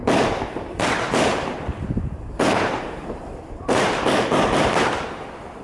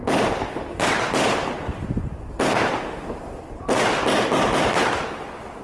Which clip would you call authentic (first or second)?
second